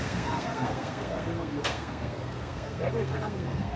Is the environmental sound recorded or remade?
remade